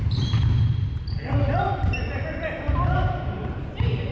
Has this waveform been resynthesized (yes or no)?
no